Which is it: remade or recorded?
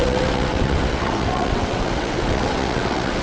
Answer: remade